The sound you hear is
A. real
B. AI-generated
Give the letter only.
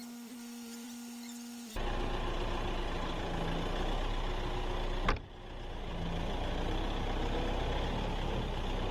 A